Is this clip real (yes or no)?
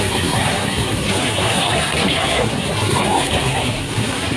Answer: no